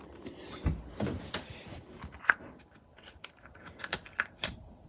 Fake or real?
real